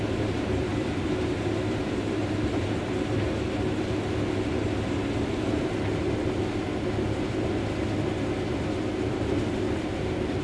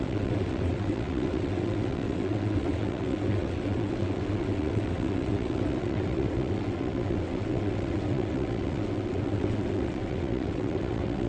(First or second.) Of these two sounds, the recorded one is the first